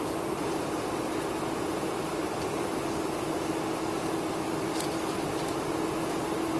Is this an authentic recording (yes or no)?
yes